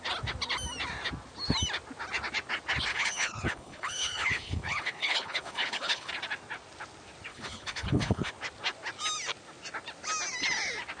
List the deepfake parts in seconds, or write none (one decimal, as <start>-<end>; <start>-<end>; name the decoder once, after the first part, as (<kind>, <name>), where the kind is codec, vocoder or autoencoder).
2.9-6.1 (codec, HILCodec); 7.3-8.3